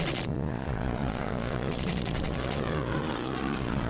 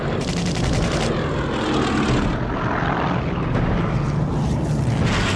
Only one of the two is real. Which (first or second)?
second